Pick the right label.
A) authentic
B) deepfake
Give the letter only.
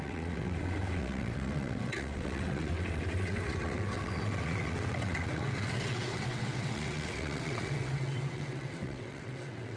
B